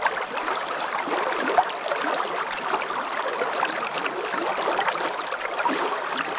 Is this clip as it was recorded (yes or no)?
yes